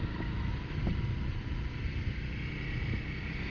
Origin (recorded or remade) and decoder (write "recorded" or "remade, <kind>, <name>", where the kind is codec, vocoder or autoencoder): recorded